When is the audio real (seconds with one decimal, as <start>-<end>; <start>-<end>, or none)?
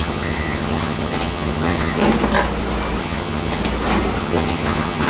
2.0-3.0; 3.6-4.2